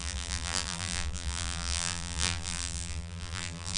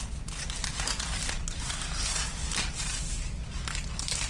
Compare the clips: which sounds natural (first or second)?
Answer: second